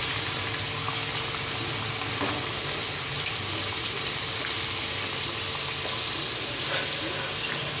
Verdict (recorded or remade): recorded